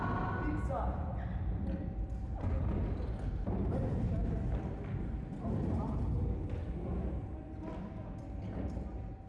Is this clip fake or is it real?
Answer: real